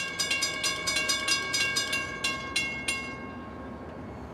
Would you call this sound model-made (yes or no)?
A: no